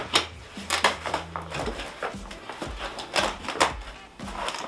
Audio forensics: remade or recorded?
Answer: recorded